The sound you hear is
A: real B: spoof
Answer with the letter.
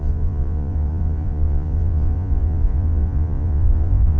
B